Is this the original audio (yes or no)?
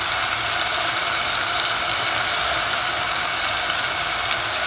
yes